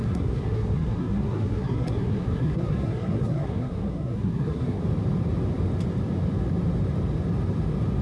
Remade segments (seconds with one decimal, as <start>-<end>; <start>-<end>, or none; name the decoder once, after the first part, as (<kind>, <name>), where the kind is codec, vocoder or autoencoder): 0.0-4.8 (codec, SNAC)